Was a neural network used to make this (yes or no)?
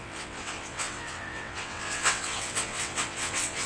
yes